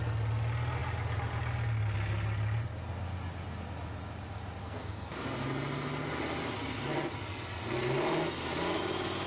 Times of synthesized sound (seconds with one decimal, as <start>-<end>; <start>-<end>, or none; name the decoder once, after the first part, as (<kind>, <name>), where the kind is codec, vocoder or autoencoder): 4.6-5.2 (codec, SNAC)